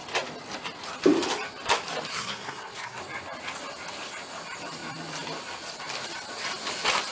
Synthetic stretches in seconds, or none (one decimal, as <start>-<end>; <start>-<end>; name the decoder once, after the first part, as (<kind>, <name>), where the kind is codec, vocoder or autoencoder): 2.1-3.0 (codec, SNAC)